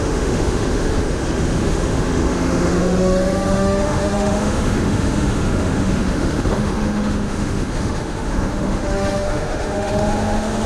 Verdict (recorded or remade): remade